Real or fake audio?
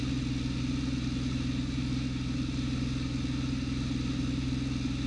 real